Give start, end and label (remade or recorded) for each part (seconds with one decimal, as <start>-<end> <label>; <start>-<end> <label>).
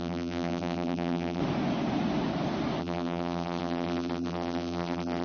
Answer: 0.0-1.4 remade; 1.4-2.8 recorded; 2.8-5.2 remade